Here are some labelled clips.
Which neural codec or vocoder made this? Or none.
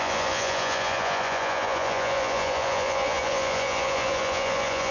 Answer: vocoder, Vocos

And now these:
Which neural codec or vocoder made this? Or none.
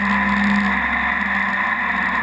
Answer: none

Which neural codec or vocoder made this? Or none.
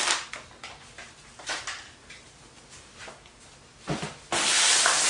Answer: none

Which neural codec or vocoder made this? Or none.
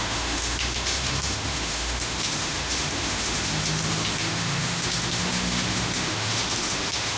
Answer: autoencoder, DAC-VAE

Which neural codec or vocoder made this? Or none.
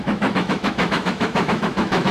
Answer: autoencoder, DAC-VAE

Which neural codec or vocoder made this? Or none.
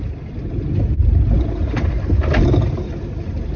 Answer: none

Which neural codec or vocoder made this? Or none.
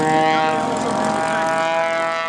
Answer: none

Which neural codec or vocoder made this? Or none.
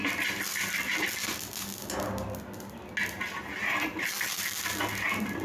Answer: none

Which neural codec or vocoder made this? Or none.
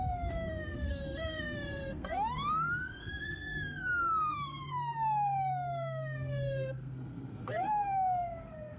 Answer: codec, SNAC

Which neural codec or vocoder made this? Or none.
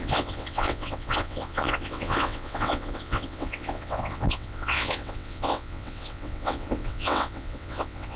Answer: vocoder, WaveNeXt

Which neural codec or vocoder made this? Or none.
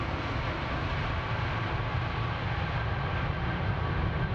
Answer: none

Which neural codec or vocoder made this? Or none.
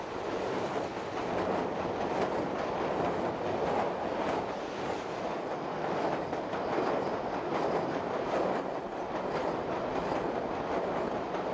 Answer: none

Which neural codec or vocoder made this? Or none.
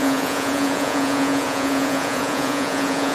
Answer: vocoder, Vocos